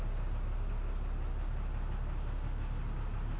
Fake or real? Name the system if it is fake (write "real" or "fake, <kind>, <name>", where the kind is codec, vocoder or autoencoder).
real